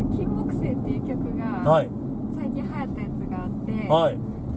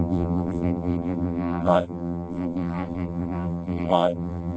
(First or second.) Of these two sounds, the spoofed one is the second